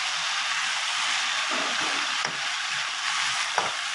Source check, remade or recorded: remade